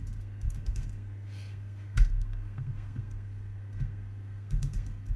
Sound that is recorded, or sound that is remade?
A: remade